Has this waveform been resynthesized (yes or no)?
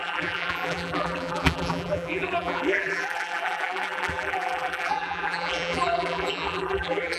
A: yes